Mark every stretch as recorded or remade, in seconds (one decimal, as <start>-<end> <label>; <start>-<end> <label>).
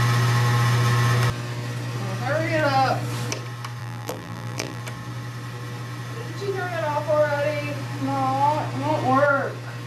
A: 0.0-3.8 recorded; 3.8-4.8 remade; 4.8-9.9 recorded